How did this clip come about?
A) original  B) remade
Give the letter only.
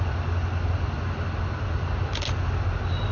A